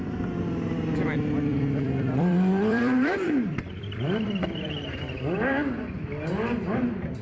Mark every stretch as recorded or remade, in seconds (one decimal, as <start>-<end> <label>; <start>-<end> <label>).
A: 0.0-1.5 recorded; 1.5-5.7 remade; 5.7-7.2 recorded